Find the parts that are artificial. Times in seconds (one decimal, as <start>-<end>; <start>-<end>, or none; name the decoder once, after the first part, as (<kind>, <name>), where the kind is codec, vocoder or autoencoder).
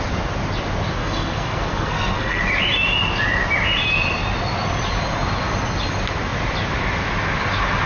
1.0-2.4 (codec, SNAC)